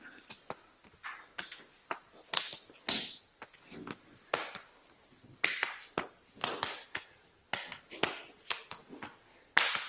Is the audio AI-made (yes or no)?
no